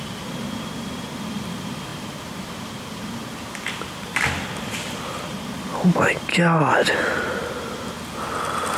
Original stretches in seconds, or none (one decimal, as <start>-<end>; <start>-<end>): 0.0-5.7; 6.3-8.8